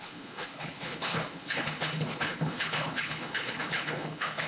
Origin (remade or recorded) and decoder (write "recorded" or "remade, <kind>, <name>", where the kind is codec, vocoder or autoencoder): remade, codec, HILCodec